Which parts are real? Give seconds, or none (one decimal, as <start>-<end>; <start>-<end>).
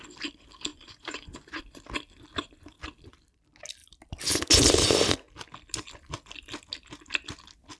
0.0-0.7; 1.6-7.8